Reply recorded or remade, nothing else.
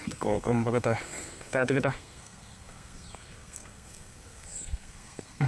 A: remade